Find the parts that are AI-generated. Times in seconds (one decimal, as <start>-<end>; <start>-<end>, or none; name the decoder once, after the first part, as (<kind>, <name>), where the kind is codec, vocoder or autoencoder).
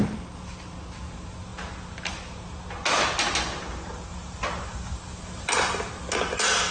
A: none